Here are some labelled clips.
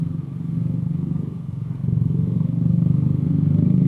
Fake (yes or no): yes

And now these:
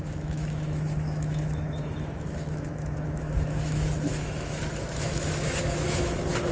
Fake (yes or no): yes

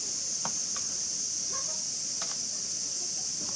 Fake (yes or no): no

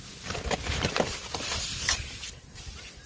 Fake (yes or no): no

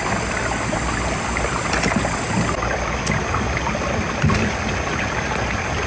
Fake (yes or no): no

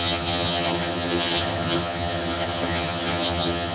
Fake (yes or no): yes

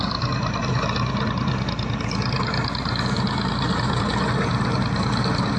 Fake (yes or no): no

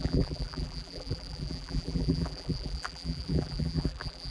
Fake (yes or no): yes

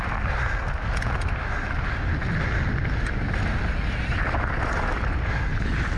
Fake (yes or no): no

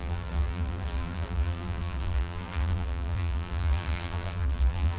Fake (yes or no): yes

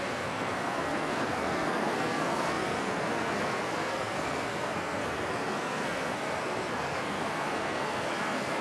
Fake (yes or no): yes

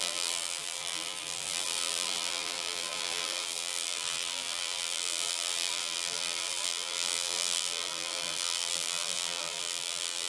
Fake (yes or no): yes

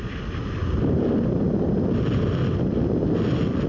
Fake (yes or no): no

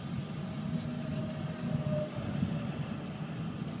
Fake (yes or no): no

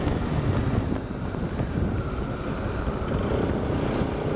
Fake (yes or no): no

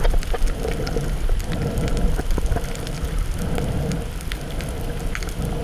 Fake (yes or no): no